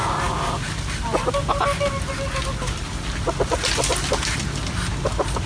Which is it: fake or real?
real